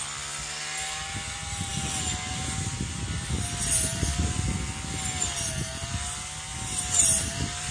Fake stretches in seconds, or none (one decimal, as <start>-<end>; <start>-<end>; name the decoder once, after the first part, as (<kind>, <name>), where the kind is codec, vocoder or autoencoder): 6.5-7.2 (vocoder, BigVGAN v2)